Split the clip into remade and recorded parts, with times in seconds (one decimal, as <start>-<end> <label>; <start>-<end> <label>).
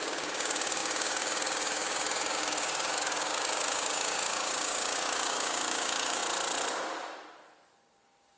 0.0-6.2 remade; 6.2-7.7 recorded; 7.7-8.4 remade